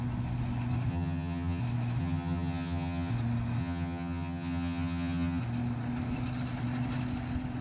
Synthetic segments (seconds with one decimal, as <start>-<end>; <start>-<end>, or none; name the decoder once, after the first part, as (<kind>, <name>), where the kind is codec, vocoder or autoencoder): 0.9-1.6 (vocoder, HiFi-GAN); 2.0-3.1; 3.6-5.4